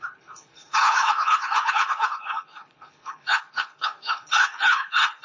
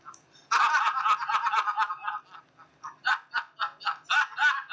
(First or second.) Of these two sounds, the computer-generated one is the first